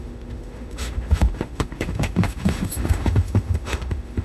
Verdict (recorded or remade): remade